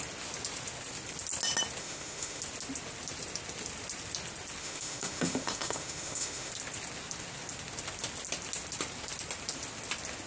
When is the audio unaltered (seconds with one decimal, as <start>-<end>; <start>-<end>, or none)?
0.0-1.8; 2.4-4.6; 6.5-10.3